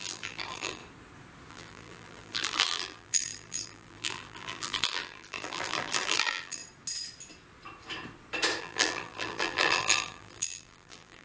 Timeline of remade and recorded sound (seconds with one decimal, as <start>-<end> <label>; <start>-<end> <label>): 0.0-0.8 remade; 0.8-1.5 recorded; 1.5-6.6 remade; 6.6-8.6 recorded; 8.6-11.2 remade